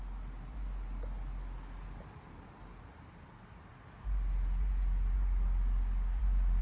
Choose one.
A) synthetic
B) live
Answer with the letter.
B